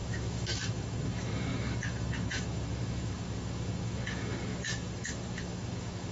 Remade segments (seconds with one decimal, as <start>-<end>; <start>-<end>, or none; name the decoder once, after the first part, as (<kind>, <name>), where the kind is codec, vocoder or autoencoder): 0.0-6.1 (autoencoder, DAC-VAE)